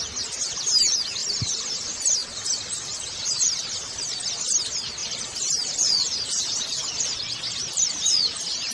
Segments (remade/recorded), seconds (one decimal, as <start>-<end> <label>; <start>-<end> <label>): 0.0-1.2 recorded; 1.2-1.8 remade; 1.8-2.2 recorded; 2.2-3.4 remade; 3.4-5.0 recorded; 5.0-7.1 remade; 7.1-8.7 recorded

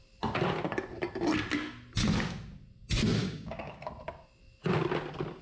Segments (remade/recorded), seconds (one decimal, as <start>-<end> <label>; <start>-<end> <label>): 0.0-3.2 recorded; 3.2-3.9 remade; 3.9-5.4 recorded

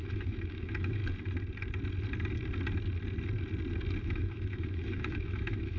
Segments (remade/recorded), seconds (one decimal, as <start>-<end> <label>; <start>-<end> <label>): 0.0-1.0 remade; 1.0-4.0 recorded; 4.0-5.8 remade

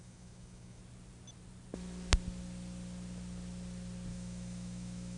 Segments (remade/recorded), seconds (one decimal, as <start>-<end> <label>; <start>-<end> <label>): 0.0-0.8 remade; 0.8-4.1 recorded; 4.1-5.2 remade

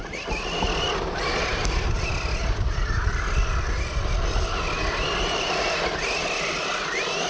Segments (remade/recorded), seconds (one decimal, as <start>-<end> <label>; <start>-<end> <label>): 0.0-7.3 recorded